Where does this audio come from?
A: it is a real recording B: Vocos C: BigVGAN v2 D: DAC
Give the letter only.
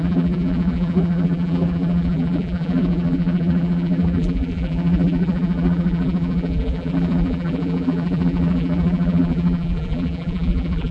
C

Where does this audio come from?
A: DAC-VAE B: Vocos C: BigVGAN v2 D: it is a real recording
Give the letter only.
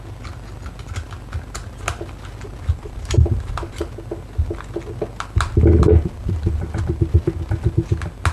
D